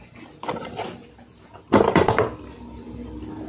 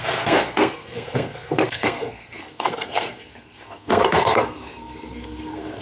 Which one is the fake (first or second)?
second